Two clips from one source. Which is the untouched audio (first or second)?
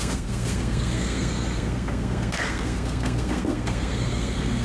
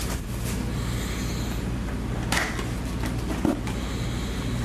second